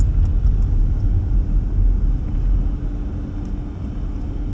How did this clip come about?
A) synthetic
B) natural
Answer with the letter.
B